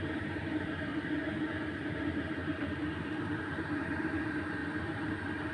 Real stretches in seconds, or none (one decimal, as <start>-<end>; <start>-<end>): 0.9-1.9; 4.6-5.5